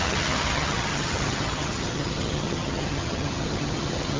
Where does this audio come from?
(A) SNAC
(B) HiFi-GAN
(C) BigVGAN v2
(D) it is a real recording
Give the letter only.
B